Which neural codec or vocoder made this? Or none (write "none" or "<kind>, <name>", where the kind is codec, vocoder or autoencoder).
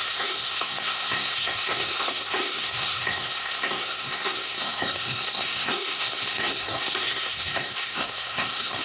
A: codec, SNAC